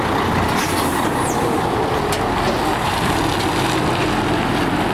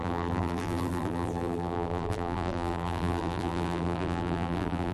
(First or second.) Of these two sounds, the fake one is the second